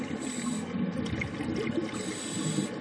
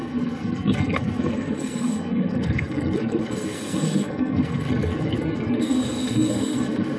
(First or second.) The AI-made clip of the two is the second